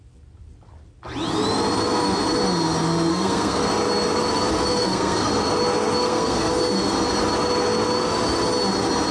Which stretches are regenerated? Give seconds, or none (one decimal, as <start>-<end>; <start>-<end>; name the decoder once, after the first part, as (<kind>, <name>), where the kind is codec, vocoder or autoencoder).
3.1-3.6 (codec, SNAC); 4.7-5.3; 6.0-6.5